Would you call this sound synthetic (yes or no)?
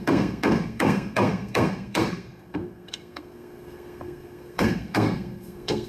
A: yes